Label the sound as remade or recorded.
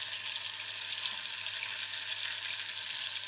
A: recorded